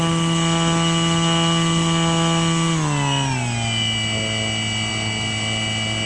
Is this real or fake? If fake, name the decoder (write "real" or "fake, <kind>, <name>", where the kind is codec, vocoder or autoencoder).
real